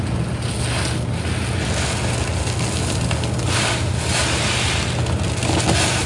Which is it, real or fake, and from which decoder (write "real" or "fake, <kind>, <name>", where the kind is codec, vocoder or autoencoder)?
real